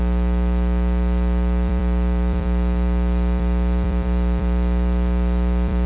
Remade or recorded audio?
remade